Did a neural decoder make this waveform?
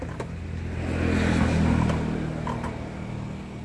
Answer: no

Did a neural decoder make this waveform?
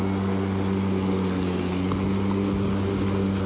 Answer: no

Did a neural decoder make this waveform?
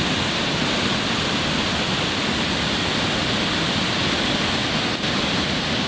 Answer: no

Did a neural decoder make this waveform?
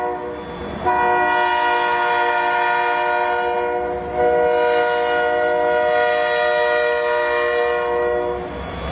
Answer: no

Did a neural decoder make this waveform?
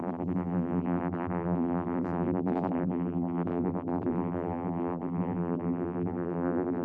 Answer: yes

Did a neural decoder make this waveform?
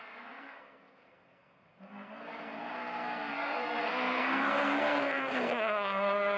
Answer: yes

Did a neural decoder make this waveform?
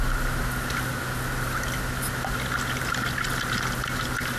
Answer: no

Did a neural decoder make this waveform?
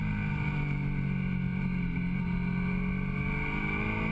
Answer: no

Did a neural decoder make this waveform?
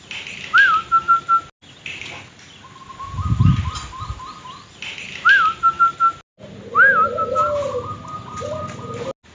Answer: no